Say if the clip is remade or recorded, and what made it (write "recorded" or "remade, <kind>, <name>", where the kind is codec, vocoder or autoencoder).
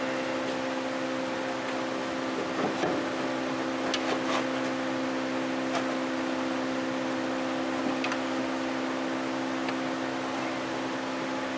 recorded